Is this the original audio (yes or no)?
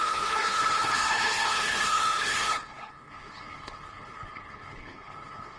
no